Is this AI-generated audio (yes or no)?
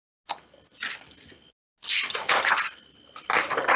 no